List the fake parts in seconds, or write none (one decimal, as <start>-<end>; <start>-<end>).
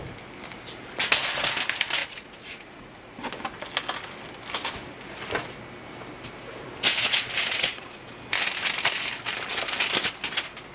2.0-3.3; 6.9-8.1